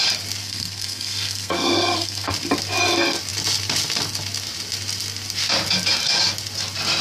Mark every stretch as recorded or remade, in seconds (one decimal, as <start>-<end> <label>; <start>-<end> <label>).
0.0-0.4 recorded; 0.4-2.3 remade; 2.3-7.0 recorded